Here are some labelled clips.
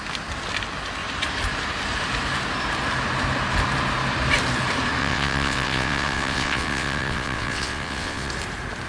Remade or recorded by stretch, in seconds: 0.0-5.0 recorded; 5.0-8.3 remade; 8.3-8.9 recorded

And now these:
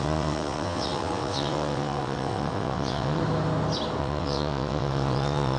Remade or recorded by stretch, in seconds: 0.0-3.2 remade; 3.2-4.0 recorded; 4.0-5.6 remade

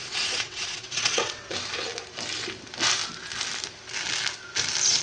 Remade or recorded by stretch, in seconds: 0.0-1.5 remade; 1.5-5.0 recorded

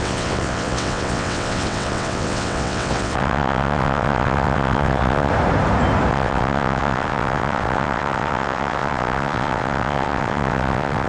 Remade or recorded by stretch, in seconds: 0.0-5.3 remade; 5.3-6.1 recorded; 6.1-11.1 remade

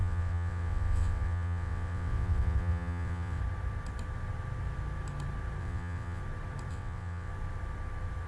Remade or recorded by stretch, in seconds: 0.0-3.4 remade; 3.4-5.6 recorded; 5.6-6.2 remade; 6.2-6.7 recorded; 6.7-7.3 remade; 7.3-8.3 recorded